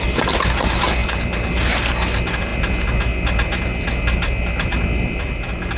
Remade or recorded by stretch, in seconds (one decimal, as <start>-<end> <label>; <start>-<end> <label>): 0.0-5.8 recorded